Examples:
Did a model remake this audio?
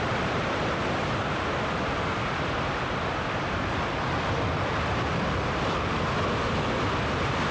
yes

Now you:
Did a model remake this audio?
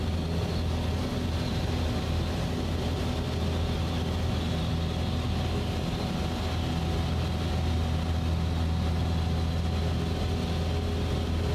no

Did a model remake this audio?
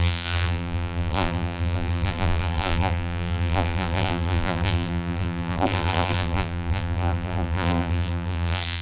yes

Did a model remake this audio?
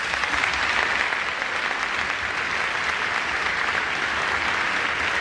no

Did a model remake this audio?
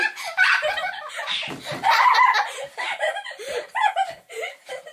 yes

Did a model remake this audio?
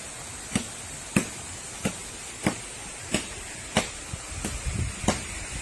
no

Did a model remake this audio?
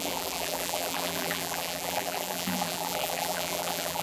yes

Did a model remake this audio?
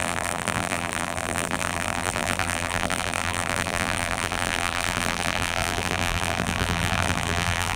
yes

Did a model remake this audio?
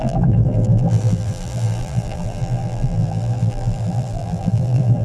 yes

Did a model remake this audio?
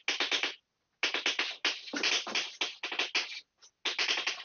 no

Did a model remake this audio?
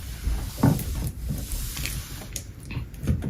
yes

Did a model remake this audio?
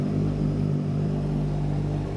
yes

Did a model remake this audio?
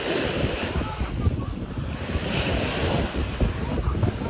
yes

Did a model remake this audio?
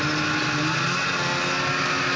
no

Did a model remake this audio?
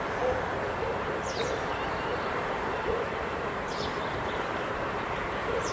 yes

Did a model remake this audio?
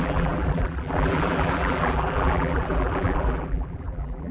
yes